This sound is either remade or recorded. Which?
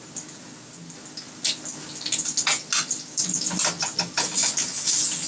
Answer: recorded